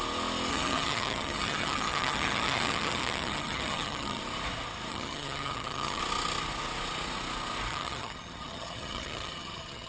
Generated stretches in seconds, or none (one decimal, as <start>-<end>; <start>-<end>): 0.5-4.2; 4.9-6.0; 7.7-9.9

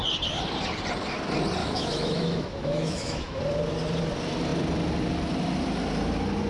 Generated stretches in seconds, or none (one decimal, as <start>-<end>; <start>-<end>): 1.6-3.4

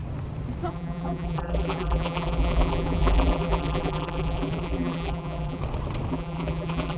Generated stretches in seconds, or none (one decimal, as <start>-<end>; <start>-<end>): 0.7-5.6; 6.1-7.0

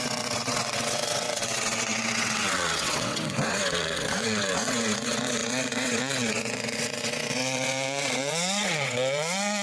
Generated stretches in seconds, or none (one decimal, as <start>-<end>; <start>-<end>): 0.0-9.6